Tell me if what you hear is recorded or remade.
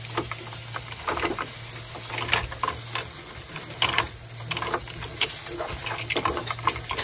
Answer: recorded